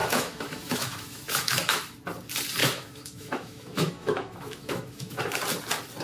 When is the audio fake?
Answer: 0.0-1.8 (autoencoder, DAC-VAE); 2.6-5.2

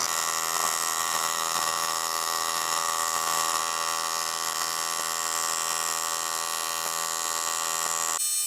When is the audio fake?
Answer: 1.0-3.6 (autoencoder, DAC-VAE)

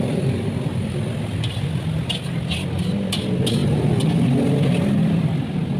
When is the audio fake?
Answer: none

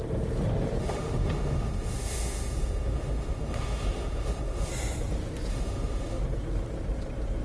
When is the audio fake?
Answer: 0.8-4.7 (autoencoder, DAC-VAE); 5.5-6.2